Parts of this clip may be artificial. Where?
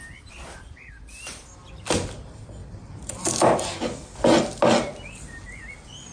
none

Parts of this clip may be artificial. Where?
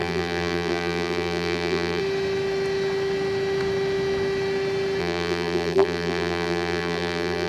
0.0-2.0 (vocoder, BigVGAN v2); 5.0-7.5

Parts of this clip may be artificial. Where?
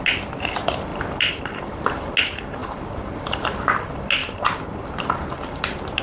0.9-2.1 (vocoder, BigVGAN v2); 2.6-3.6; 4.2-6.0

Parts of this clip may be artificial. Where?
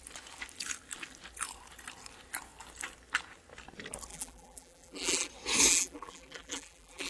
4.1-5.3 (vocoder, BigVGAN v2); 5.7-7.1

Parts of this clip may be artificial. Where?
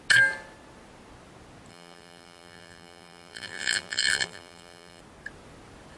1.7-5.0 (vocoder, BigVGAN v2)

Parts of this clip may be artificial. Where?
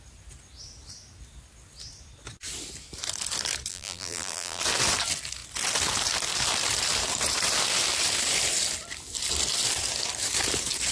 3.7-4.6 (vocoder, BigVGAN v2)